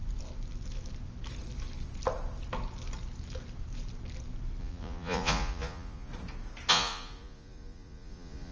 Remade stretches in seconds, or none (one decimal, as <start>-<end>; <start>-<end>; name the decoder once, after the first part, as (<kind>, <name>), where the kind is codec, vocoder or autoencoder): 4.6-6.1 (vocoder, Vocos); 6.7-8.5